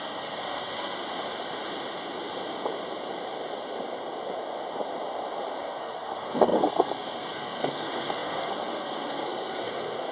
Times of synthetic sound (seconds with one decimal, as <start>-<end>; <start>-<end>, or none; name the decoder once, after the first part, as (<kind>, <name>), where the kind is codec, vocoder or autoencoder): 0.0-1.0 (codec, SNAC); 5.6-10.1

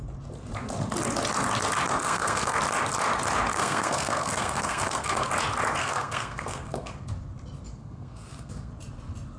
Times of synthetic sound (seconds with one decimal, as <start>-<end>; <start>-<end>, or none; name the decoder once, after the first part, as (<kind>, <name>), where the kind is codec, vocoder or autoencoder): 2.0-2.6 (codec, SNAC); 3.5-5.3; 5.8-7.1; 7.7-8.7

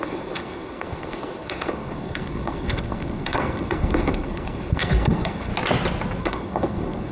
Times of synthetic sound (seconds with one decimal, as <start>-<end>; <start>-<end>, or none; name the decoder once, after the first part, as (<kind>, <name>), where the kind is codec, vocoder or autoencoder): 0.0-5.5 (codec, SNAC); 6.2-7.1